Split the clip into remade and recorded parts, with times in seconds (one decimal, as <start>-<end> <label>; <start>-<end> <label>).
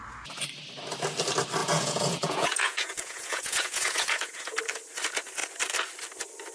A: 0.0-1.6 recorded; 1.6-4.6 remade; 4.6-6.5 recorded